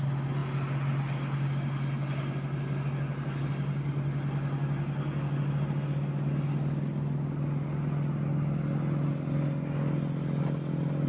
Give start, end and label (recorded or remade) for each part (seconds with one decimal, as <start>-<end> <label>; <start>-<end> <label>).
0.0-11.1 recorded